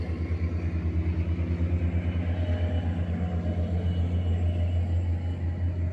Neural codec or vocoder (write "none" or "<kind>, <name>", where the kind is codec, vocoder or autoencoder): none